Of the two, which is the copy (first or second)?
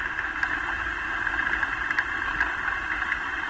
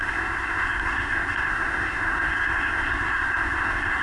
second